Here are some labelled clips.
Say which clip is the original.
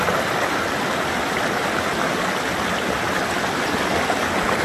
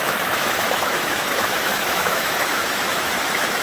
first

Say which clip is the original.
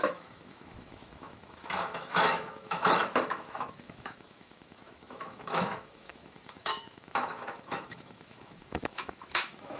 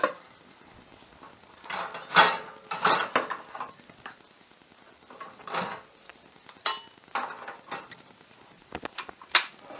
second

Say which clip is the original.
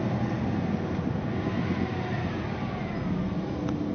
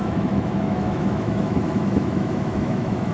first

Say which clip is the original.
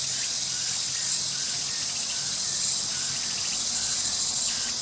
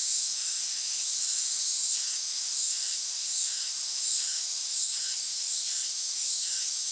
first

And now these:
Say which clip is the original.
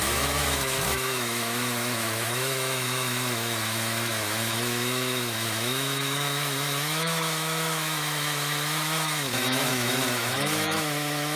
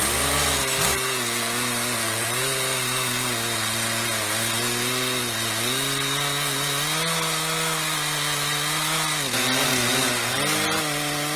second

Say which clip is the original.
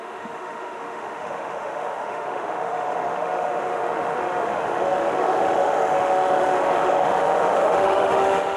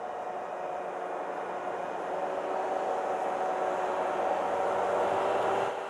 second